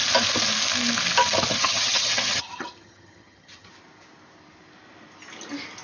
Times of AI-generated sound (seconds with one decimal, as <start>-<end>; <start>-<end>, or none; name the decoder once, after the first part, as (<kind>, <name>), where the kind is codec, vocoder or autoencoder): 1.5-3.7 (vocoder, HiFi-GAN)